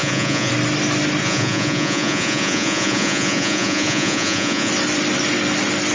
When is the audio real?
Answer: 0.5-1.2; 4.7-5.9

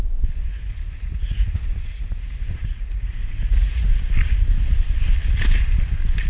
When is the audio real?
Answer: 0.0-0.5; 3.9-6.3

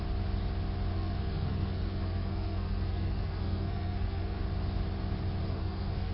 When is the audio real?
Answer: 0.0-0.9; 4.4-5.4

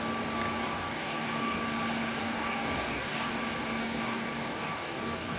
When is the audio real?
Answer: 0.0-0.6; 1.6-2.2; 3.4-3.8

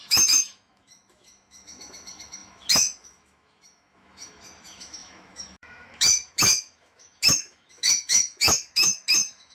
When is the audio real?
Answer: none

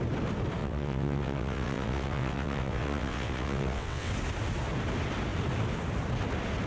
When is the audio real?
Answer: 0.0-0.6; 4.1-6.7

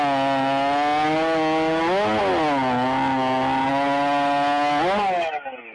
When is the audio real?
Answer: 0.0-5.7

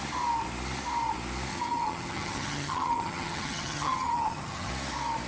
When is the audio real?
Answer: 0.0-1.5; 4.7-5.3